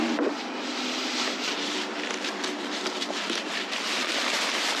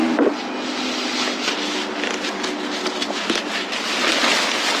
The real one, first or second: second